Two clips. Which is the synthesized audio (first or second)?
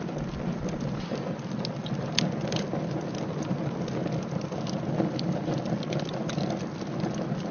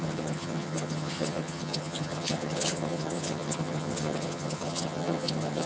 second